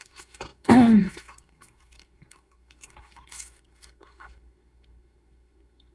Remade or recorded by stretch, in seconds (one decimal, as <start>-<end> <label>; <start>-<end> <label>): 0.0-5.9 remade